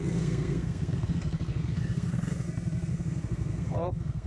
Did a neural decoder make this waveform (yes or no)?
yes